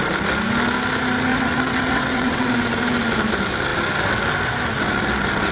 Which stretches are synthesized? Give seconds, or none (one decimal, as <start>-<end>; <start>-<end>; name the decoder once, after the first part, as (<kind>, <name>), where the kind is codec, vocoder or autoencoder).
1.3-2.5 (vocoder, WaveNeXt)